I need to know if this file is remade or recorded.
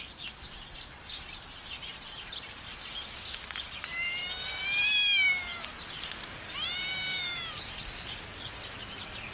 remade